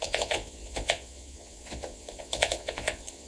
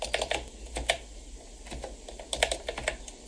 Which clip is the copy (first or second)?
first